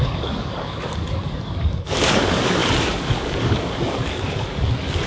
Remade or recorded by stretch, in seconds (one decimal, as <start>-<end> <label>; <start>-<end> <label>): 0.0-5.1 remade